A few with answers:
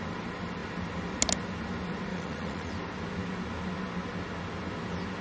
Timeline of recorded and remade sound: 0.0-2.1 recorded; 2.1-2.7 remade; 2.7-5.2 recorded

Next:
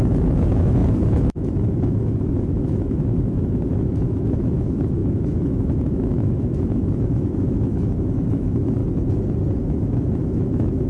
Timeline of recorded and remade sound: 0.0-8.8 remade; 8.8-9.6 recorded; 9.6-10.9 remade

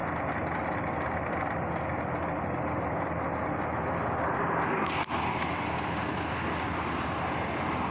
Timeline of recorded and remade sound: 0.0-7.9 recorded